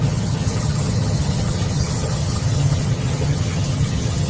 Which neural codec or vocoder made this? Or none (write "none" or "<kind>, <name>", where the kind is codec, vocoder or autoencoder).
vocoder, HiFi-GAN